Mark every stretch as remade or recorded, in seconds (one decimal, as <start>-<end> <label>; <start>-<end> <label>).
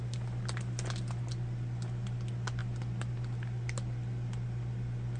0.0-5.2 recorded